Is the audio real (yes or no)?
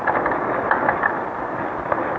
yes